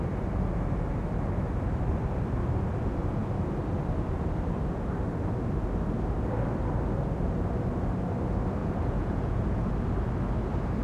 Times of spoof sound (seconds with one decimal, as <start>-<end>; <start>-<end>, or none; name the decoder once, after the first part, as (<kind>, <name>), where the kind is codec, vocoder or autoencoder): 8.6-9.7 (vocoder, Vocos)